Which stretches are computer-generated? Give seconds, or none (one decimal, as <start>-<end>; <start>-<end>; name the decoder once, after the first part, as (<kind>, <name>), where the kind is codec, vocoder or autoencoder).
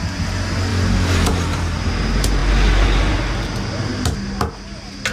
0.7-1.9 (vocoder, BigVGAN v2)